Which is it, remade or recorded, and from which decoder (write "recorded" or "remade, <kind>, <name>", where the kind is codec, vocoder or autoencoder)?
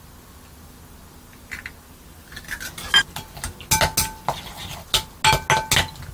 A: recorded